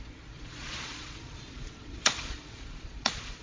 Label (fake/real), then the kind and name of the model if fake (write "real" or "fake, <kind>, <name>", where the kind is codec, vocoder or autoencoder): fake, vocoder, Vocos